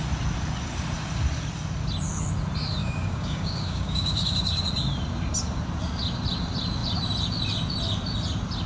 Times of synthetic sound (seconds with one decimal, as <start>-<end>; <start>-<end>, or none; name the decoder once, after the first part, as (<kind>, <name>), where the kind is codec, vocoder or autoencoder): 2.8-4.6 (codec, DAC)

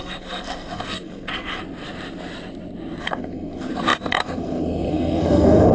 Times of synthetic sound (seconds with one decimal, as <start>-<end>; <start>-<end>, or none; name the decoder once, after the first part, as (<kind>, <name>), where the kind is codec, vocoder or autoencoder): 0.0-1.6 (codec, SNAC); 3.0-5.7

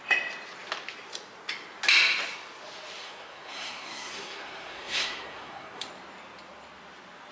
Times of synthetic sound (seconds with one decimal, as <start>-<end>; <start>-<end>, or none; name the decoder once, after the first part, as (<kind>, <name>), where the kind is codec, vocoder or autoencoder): 3.0-5.9 (codec, SNAC)

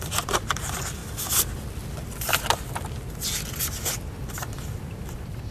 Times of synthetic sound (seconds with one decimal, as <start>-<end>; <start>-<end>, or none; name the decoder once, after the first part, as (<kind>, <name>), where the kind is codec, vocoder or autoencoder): 0.0-1.0 (vocoder, BigVGAN v2); 4.3-5.5

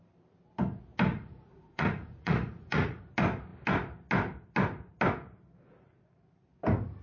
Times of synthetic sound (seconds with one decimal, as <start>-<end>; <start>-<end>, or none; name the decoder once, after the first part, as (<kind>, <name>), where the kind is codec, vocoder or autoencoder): 1.1-3.0 (vocoder, Vocos)

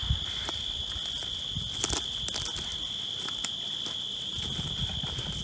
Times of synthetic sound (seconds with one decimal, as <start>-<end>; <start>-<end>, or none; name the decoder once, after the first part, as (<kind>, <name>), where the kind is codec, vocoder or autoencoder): 4.3-4.9 (vocoder, BigVGAN v2)

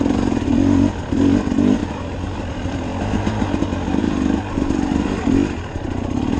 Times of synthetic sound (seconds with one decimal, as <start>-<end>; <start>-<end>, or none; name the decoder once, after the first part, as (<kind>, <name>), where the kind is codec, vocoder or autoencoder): 0.0-2.9 (vocoder, BigVGAN v2); 4.5-5.4